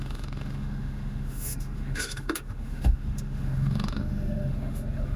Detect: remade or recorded remade